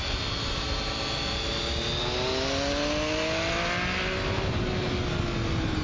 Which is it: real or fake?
real